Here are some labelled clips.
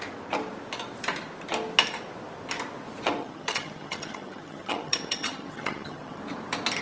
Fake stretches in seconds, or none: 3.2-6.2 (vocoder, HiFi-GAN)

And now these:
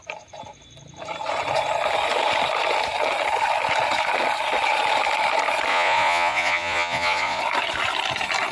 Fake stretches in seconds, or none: 5.7-7.4 (vocoder, Vocos)

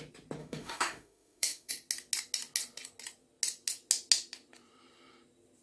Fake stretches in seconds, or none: 0.4-1.7 (autoencoder, DAC-VAE)

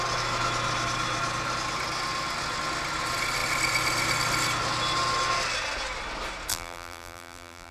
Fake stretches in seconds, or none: 6.5-7.7 (vocoder, BigVGAN v2)